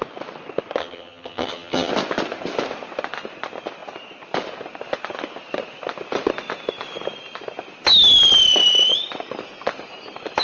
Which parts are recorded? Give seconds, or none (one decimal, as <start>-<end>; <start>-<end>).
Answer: 0.0-0.8; 1.9-10.4